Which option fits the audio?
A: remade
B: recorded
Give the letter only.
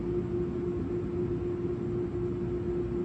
B